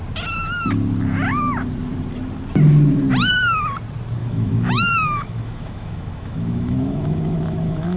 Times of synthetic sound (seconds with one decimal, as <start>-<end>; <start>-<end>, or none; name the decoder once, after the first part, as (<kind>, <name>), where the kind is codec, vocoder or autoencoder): 4.2-8.0 (autoencoder, DAC-VAE)